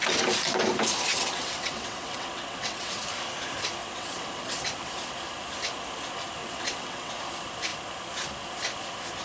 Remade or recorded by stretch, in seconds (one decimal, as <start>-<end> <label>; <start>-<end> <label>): 0.0-1.1 recorded; 1.1-3.0 remade; 3.0-3.8 recorded; 3.8-4.9 remade; 4.9-6.4 recorded; 6.4-7.1 remade; 7.1-9.2 recorded